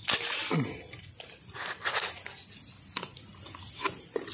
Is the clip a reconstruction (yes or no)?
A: no